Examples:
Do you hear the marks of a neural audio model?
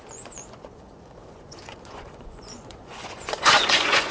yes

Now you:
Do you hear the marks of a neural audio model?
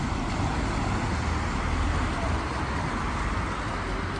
no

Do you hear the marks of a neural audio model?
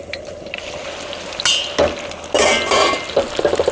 no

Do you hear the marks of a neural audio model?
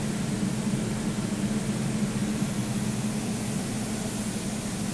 no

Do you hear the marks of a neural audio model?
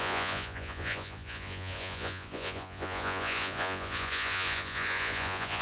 yes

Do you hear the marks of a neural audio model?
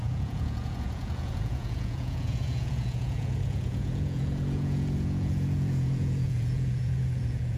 yes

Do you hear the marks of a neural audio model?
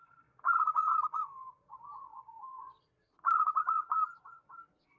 yes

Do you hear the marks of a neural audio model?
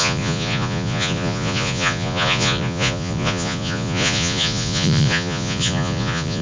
yes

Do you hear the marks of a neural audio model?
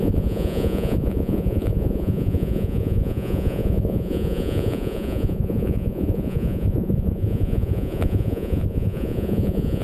yes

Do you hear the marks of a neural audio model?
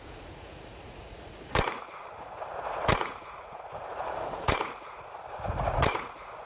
yes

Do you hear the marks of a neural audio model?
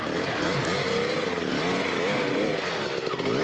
no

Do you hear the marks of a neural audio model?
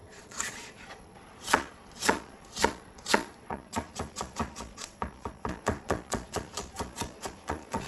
yes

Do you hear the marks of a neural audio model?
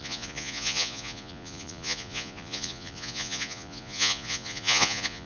yes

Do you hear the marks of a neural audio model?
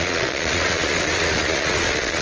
yes